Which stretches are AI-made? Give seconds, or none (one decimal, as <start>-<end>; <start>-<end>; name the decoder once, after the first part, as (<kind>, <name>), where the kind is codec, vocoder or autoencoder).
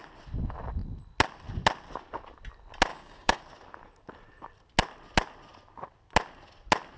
2.9-3.4 (codec, DAC)